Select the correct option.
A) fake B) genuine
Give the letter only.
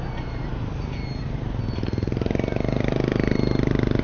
B